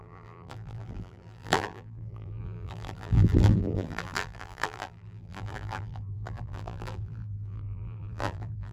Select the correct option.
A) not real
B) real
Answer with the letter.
A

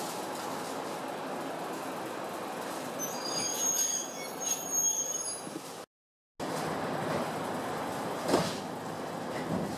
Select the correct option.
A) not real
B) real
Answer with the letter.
B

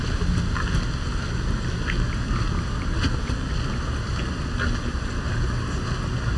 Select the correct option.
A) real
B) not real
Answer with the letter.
A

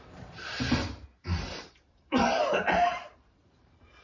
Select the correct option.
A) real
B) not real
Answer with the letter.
B